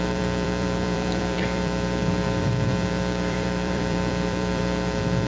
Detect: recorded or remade remade